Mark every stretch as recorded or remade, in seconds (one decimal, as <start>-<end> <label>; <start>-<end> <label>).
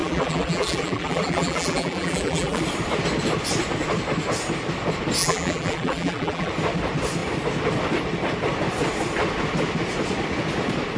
0.0-2.6 remade; 2.6-5.2 recorded; 5.2-6.5 remade; 6.5-11.0 recorded